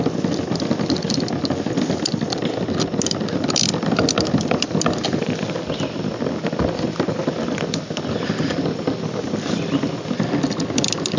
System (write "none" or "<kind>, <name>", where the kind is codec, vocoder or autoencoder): none